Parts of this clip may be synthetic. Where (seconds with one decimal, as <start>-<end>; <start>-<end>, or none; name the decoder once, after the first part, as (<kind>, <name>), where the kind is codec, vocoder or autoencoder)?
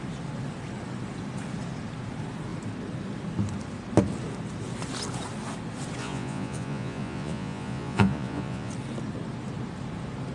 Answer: 6.0-8.7 (vocoder, Vocos)